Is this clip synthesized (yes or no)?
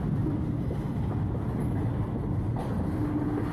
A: no